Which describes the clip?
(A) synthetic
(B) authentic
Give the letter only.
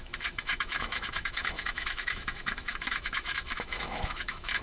A